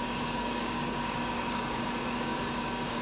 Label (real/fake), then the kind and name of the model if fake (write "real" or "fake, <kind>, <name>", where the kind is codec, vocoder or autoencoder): fake, codec, DAC